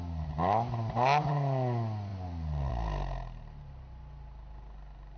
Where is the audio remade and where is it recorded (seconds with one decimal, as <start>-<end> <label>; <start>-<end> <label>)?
0.0-5.2 recorded